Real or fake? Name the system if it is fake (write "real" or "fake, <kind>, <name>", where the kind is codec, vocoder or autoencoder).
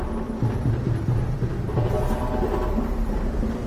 real